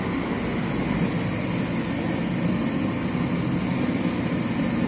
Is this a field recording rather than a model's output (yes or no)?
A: yes